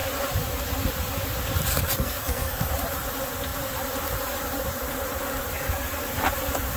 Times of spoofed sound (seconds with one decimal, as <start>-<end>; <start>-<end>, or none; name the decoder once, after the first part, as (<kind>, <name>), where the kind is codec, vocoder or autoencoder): 1.7-2.7 (codec, SNAC)